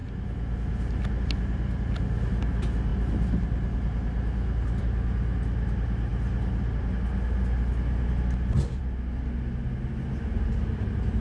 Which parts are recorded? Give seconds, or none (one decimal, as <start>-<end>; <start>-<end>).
0.0-11.2